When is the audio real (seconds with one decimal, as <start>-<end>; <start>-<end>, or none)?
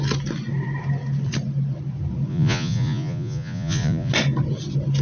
0.0-2.3; 4.1-5.0